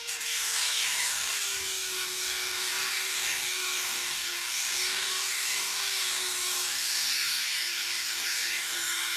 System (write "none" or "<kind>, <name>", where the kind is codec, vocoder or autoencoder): codec, DAC